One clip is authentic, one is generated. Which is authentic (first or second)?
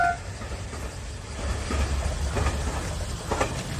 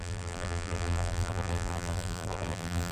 first